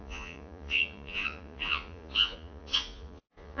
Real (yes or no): no